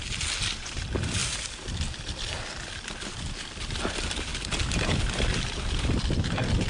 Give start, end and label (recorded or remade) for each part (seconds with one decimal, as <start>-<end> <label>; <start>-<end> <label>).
0.0-6.7 recorded